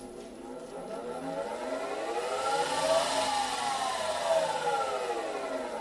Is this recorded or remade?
recorded